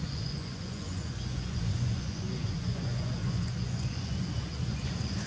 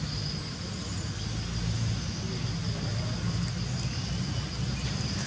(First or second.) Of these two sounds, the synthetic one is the first